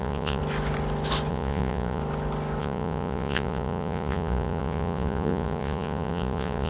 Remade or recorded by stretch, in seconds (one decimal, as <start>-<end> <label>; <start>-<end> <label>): 0.0-0.4 remade; 0.4-1.3 recorded; 1.3-2.0 remade; 2.0-2.6 recorded; 2.6-6.7 remade